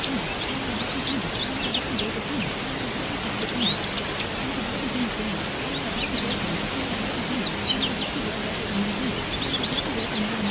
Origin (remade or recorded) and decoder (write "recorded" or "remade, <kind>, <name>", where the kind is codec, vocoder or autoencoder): recorded